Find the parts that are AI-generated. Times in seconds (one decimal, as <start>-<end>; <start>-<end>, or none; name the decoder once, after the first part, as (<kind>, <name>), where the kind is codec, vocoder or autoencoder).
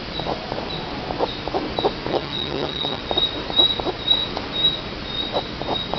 2.1-3.0 (vocoder, HiFi-GAN)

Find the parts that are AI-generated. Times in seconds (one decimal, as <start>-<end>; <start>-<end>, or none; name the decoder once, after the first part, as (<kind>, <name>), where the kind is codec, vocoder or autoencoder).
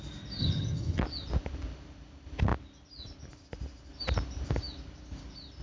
0.4-1.0 (vocoder, HiFi-GAN)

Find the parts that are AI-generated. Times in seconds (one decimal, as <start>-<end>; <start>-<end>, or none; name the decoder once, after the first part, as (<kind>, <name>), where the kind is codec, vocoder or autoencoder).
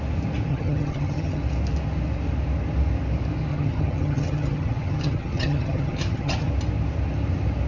0.5-1.4 (vocoder, HiFi-GAN); 3.5-6.5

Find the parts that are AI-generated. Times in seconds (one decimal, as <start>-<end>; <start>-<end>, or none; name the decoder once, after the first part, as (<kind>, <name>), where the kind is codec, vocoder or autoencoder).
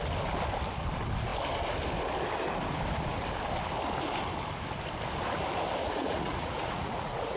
5.8-7.4 (vocoder, Vocos)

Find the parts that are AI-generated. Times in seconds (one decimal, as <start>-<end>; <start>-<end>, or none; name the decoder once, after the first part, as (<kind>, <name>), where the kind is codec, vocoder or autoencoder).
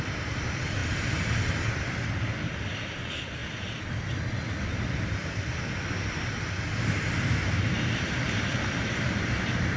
0.0-3.4 (vocoder, BigVGAN v2); 8.0-9.8